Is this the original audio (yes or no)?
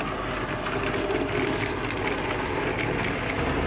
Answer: yes